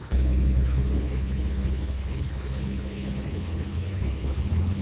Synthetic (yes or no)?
yes